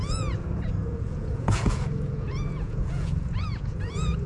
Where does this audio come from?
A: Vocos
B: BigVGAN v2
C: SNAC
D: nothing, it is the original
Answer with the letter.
A